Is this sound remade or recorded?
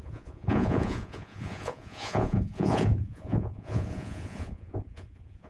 remade